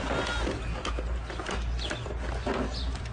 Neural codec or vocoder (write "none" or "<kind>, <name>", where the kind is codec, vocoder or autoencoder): none